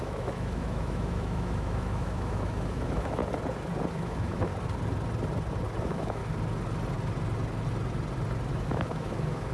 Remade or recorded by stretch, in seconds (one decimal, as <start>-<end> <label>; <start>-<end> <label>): 0.0-3.2 remade; 3.2-3.9 recorded; 3.9-4.5 remade; 4.5-5.8 recorded; 5.8-6.2 remade; 6.2-8.5 recorded; 8.5-9.5 remade